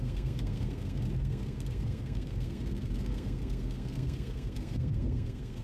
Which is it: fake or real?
fake